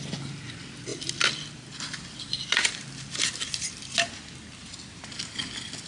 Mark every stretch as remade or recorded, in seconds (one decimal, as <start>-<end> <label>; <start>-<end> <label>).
0.0-5.9 recorded